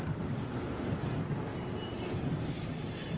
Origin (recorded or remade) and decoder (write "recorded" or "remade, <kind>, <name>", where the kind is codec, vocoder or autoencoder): remade, vocoder, BigVGAN v2